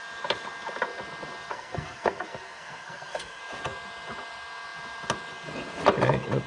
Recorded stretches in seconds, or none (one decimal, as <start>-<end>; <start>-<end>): 0.0-1.5; 3.4-6.5